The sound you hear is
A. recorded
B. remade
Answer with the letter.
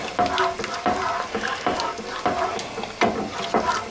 A